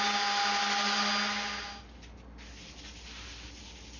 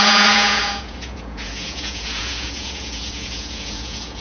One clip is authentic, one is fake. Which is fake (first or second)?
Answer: second